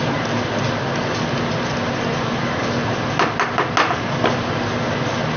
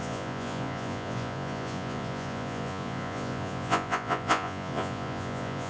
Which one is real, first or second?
first